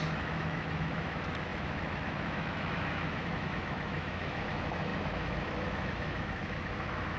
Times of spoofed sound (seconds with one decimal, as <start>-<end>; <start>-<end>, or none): 0.0-7.2